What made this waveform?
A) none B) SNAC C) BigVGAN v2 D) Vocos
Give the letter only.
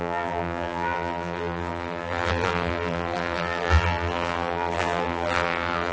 C